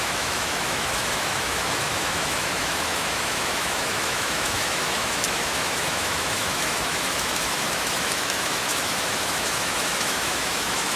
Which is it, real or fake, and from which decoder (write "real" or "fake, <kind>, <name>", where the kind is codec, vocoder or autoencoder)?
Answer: fake, autoencoder, DAC-VAE